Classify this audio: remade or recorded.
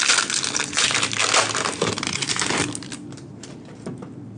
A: recorded